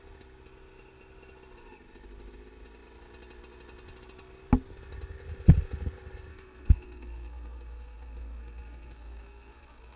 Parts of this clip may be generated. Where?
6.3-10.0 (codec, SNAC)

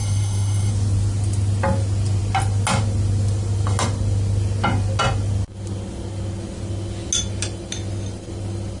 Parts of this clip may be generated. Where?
0.0-0.7 (codec, SNAC)

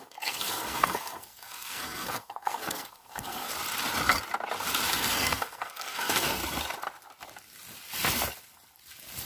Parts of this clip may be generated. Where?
0.0-3.5 (codec, SNAC); 4.9-6.4

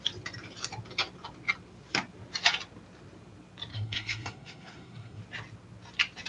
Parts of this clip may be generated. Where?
3.7-5.2 (codec, SNAC)

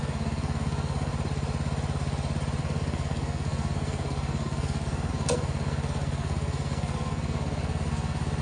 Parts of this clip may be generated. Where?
0.0-1.1 (codec, SNAC); 2.6-8.4

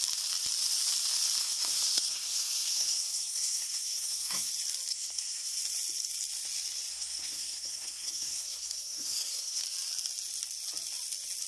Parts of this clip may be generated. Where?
1.4-4.5 (codec, SNAC); 4.9-5.6; 6.9-9.6